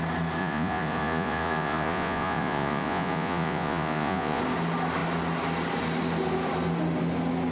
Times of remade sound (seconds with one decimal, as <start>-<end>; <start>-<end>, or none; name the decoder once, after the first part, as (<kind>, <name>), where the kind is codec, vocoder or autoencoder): 0.4-4.4 (vocoder, Vocos)